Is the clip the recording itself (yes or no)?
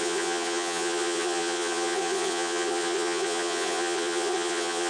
no